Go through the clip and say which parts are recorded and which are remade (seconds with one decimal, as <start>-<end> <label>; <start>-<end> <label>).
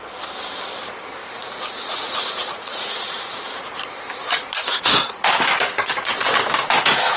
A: 0.0-1.2 recorded; 1.2-3.8 remade; 3.8-7.2 recorded